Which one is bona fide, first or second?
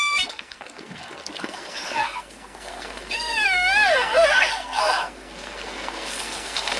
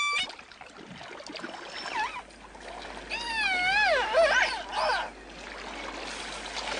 second